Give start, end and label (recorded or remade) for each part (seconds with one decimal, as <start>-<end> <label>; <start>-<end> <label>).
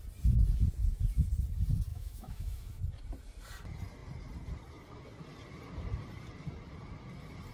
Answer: 0.0-1.9 recorded; 1.9-2.8 remade; 2.8-7.5 recorded